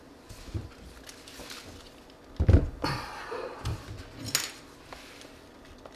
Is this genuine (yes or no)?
yes